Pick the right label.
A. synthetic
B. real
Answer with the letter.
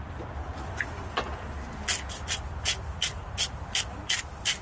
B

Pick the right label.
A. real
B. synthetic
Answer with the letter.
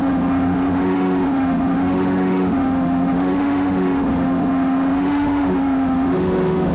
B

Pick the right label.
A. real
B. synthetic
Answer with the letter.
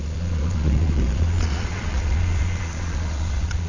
B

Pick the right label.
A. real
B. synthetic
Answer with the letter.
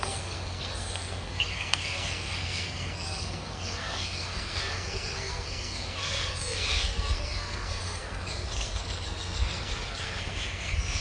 B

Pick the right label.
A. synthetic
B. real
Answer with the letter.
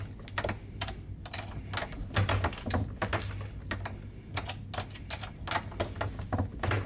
B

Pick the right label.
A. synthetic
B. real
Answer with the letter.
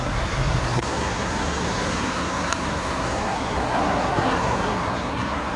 A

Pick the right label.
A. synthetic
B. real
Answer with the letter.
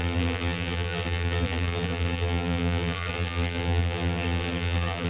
A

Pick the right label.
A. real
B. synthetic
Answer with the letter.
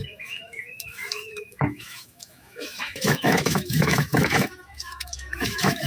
B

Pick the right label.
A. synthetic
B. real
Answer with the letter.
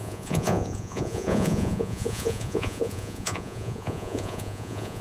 A